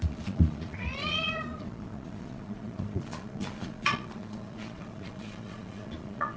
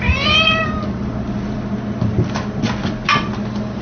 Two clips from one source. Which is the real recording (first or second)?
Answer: second